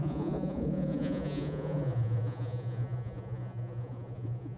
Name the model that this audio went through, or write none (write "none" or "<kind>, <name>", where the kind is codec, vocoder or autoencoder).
vocoder, Vocos